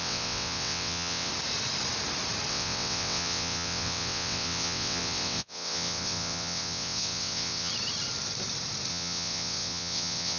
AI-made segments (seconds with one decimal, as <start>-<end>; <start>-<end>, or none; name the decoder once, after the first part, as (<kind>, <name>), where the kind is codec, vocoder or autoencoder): 0.0-1.3 (vocoder, WaveNeXt); 2.5-7.7; 8.9-10.4